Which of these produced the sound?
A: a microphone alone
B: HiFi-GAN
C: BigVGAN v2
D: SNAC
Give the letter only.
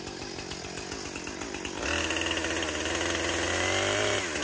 A